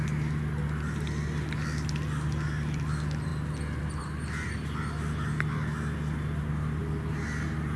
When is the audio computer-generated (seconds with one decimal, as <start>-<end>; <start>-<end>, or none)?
none